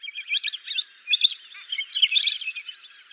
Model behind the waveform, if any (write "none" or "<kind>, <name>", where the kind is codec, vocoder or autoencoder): none